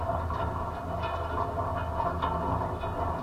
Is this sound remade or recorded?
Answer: recorded